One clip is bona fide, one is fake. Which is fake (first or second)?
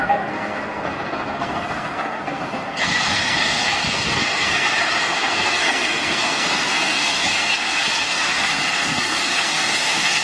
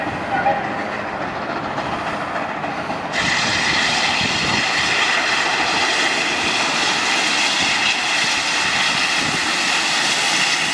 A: first